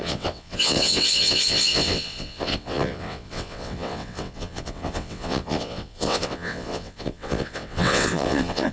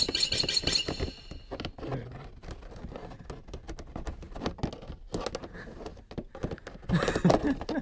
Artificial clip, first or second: first